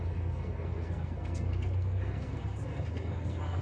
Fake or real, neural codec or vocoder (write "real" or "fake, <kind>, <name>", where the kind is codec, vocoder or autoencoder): fake, codec, SNAC